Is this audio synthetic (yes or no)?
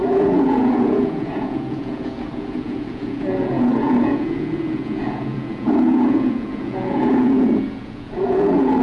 yes